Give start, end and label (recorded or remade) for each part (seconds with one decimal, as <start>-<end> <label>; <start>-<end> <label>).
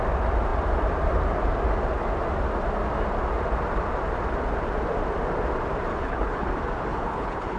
0.0-5.9 recorded; 5.9-6.5 remade; 6.5-6.9 recorded; 6.9-7.6 remade